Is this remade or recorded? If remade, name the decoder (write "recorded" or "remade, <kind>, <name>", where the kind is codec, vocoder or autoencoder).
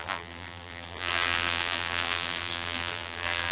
remade, vocoder, BigVGAN v2